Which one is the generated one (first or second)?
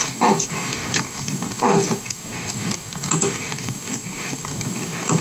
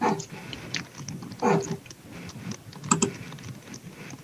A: first